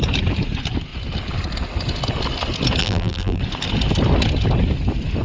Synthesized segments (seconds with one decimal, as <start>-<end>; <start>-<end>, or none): 2.8-3.4